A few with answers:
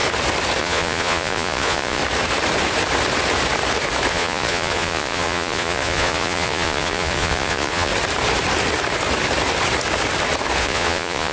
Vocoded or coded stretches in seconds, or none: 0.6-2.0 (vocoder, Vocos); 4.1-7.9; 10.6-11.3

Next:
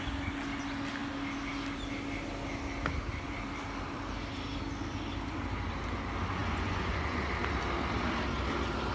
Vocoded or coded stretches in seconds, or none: 6.4-7.3 (vocoder, Vocos)

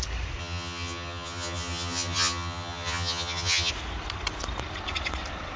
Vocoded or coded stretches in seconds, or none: 0.4-3.7 (vocoder, HiFi-GAN)

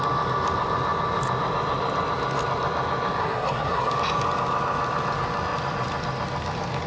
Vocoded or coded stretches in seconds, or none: 3.2-3.9 (codec, SNAC)

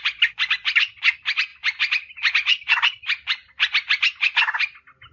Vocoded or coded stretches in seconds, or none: none

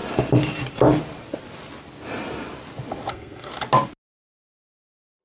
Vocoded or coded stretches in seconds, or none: 3.1-3.5 (codec, SNAC)

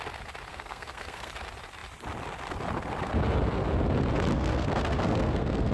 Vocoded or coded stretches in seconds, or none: 0.5-1.3 (codec, SNAC); 4.3-5.7

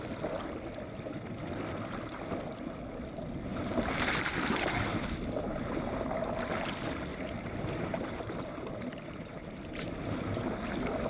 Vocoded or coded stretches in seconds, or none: 3.5-5.9 (vocoder, BigVGAN v2); 7.1-10.5